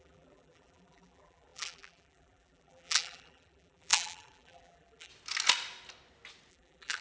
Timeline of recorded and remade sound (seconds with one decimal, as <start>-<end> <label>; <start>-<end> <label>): 0.0-5.1 remade; 5.1-6.5 recorded; 6.5-7.0 remade